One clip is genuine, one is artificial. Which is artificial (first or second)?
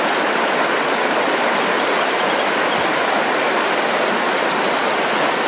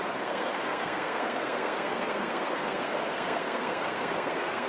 second